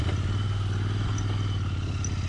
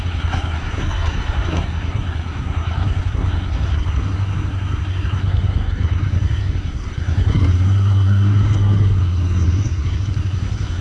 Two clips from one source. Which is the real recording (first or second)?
first